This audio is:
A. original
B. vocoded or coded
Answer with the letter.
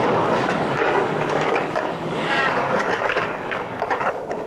B